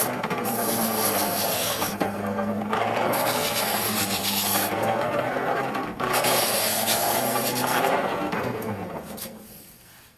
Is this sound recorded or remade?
remade